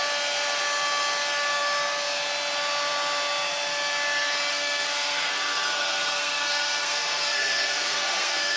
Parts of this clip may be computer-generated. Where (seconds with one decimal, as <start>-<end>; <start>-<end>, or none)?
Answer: 4.5-8.6